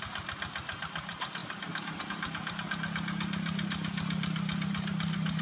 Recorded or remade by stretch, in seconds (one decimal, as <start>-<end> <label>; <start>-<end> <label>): 0.0-5.4 recorded